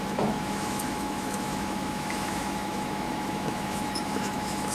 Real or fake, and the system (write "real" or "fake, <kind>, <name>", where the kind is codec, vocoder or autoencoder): fake, autoencoder, DAC-VAE